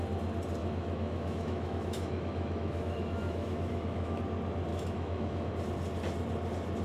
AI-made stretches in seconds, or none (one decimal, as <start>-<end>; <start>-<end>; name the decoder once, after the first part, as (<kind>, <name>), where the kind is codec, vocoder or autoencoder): 0.6-4.2 (autoencoder, DAC-VAE); 4.7-5.5

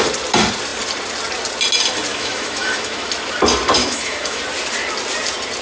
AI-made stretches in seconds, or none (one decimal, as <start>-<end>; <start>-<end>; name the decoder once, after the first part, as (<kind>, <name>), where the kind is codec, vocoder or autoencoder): 2.1-3.1 (autoencoder, DAC-VAE); 3.8-4.4

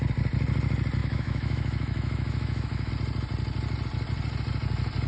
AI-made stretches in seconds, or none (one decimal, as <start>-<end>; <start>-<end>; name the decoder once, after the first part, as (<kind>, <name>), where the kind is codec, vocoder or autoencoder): 1.0-2.9 (autoencoder, DAC-VAE)

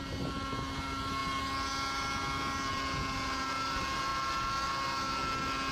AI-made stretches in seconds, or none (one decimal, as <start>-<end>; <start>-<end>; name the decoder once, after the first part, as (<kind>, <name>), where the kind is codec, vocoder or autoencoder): none

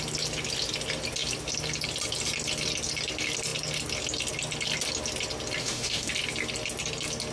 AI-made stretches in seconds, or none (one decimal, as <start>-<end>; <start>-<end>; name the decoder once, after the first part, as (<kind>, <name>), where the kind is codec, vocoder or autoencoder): 5.6-6.1 (autoencoder, DAC-VAE)

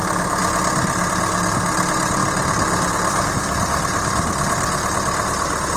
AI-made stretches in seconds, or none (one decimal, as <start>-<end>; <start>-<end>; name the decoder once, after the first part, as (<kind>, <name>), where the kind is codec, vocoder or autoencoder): none

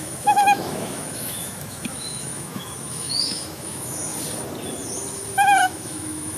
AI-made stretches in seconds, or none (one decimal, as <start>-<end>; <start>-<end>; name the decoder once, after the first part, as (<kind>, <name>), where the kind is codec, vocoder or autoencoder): 0.0-4.1 (autoencoder, DAC-VAE); 5.6-6.4